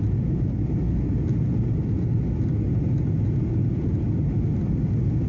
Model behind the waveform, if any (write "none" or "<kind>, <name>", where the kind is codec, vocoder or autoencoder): none